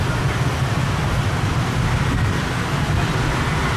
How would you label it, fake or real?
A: real